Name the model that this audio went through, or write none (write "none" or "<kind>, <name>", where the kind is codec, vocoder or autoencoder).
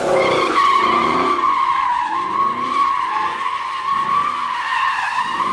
vocoder, Vocos